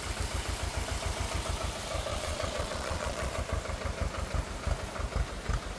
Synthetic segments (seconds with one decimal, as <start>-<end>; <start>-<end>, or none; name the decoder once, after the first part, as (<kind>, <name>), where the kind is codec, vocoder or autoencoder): 2.1-3.4 (vocoder, Vocos)